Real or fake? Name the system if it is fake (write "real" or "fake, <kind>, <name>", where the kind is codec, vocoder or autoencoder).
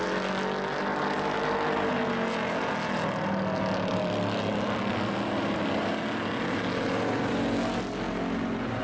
real